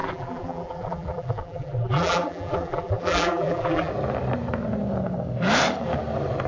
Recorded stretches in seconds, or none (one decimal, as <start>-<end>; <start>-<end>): 3.9-6.5